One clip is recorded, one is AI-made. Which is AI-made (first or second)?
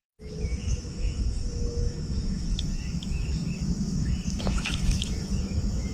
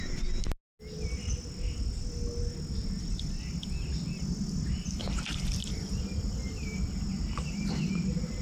first